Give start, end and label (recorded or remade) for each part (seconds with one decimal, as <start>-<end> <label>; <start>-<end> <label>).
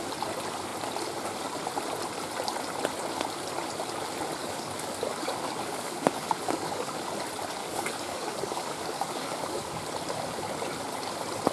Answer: 0.0-4.4 recorded; 4.4-7.1 remade; 7.1-7.6 recorded; 7.6-9.8 remade; 9.8-11.5 recorded